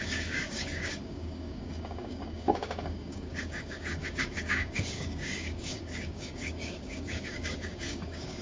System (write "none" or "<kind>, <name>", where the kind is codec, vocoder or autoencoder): codec, DAC